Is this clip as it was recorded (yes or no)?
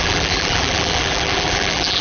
no